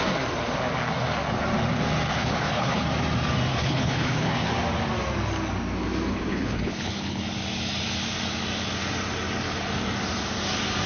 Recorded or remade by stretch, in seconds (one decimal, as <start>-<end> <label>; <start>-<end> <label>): 0.0-2.1 recorded; 2.1-2.8 remade; 2.8-3.5 recorded; 3.5-4.5 remade; 4.5-6.1 recorded; 6.1-7.2 remade; 7.2-10.9 recorded

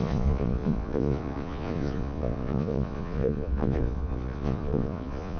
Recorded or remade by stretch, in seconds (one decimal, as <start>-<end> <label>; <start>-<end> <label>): 0.0-5.4 remade

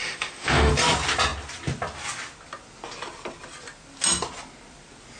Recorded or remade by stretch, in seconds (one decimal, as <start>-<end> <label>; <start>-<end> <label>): 0.0-0.7 remade; 0.7-5.2 recorded

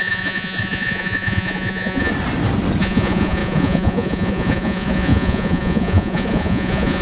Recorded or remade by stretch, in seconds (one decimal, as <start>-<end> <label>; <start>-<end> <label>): 0.0-2.1 remade; 2.1-2.8 recorded; 2.8-7.0 remade